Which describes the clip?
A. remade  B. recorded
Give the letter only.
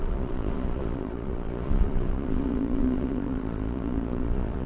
A